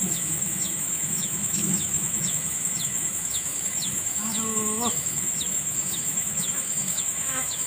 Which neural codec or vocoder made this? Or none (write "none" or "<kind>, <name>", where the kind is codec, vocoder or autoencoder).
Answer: autoencoder, DAC-VAE